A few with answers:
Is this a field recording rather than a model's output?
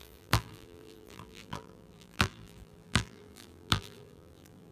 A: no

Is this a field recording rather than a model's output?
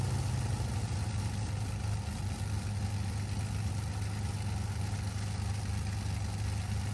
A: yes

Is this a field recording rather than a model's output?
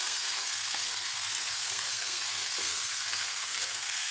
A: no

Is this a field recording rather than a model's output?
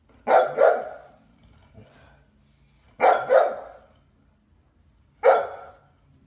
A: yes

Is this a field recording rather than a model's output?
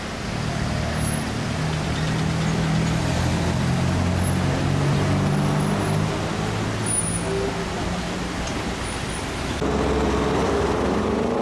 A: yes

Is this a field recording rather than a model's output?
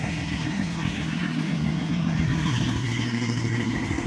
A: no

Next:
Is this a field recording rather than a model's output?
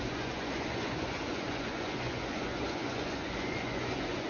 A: no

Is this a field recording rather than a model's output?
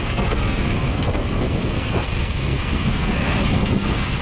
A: no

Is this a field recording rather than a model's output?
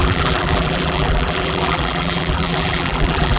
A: no